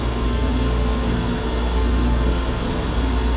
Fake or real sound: fake